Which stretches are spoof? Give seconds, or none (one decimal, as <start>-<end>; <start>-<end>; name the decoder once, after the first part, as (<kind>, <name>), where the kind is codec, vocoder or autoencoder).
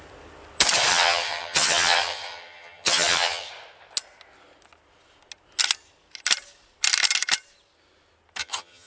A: 0.9-3.5 (vocoder, HiFi-GAN); 8.4-8.9